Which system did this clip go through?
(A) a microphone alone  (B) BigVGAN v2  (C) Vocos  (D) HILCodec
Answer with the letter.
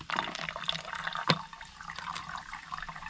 A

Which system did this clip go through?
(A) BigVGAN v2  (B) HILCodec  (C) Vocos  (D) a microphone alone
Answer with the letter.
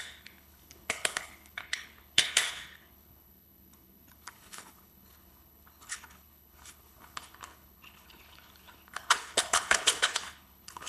B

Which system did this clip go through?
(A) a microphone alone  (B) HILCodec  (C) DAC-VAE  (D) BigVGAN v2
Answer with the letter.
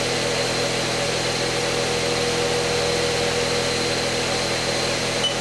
A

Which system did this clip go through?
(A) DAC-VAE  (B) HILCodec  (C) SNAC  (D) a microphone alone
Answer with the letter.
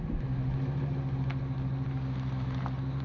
D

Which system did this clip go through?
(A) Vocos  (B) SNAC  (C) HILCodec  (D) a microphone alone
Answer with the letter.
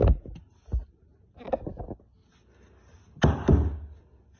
D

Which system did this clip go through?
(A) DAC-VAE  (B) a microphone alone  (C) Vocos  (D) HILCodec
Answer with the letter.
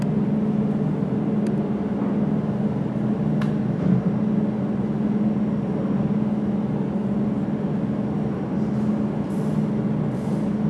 B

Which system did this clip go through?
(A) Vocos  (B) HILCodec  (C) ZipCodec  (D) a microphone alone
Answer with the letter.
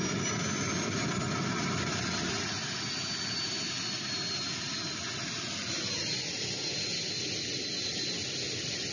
D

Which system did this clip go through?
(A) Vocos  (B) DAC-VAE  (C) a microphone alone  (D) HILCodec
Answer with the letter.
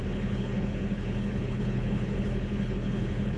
D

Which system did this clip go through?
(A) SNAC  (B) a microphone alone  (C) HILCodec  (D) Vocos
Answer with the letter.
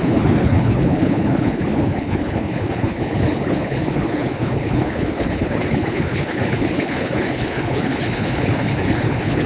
C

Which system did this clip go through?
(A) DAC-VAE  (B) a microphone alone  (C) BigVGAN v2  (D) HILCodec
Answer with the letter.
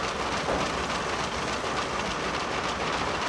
B